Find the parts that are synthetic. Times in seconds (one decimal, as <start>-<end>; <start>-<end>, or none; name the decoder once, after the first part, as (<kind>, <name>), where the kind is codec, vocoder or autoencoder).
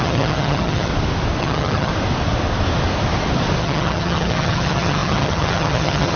0.0-0.9 (vocoder, HiFi-GAN); 1.4-1.9; 3.6-6.2